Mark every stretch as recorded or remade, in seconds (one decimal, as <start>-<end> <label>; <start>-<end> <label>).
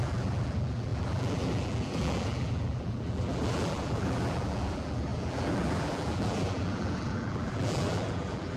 0.0-8.6 remade